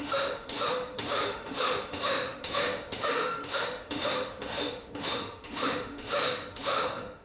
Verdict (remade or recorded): remade